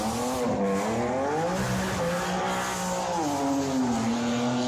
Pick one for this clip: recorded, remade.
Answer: recorded